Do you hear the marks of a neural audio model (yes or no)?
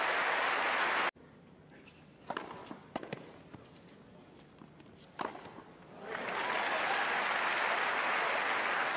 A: no